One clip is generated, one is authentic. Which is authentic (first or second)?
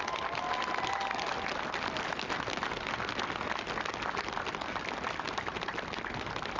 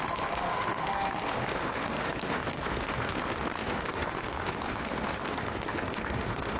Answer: first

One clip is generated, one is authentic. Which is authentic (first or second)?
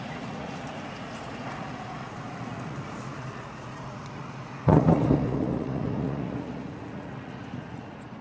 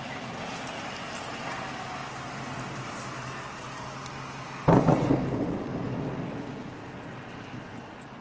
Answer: second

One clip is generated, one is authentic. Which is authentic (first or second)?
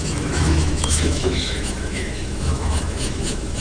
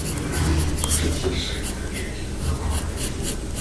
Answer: second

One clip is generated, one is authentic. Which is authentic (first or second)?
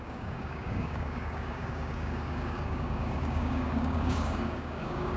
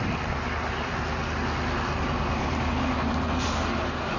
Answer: second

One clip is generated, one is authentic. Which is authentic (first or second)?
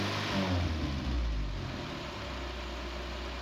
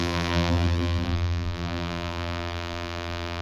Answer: first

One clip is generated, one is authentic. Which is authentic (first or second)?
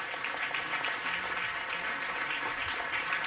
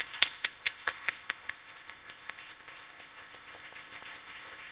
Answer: first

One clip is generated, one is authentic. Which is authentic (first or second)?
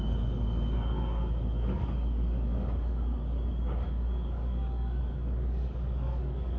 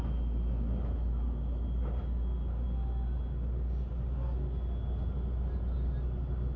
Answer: second